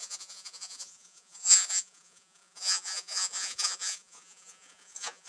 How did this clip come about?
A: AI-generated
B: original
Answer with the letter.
A